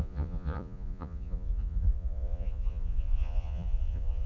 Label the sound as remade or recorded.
remade